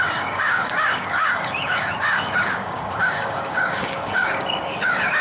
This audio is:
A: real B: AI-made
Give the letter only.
B